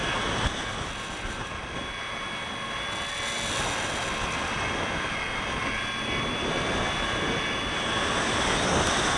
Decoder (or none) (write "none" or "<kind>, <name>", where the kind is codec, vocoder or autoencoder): none